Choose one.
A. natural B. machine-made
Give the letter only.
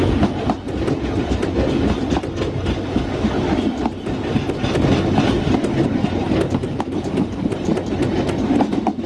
A